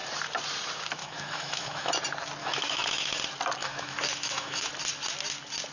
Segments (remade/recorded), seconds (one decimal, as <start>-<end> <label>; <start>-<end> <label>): 0.0-1.0 recorded; 1.0-1.9 remade; 1.9-2.4 recorded; 2.4-3.2 remade; 3.2-3.6 recorded; 3.6-4.7 remade; 4.7-5.7 recorded